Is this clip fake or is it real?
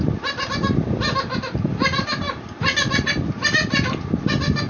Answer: real